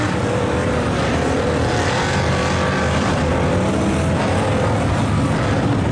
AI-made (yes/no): no